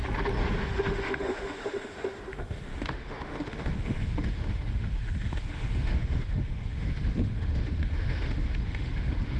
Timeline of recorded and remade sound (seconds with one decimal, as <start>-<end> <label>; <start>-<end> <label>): 0.0-0.6 recorded; 0.6-9.4 remade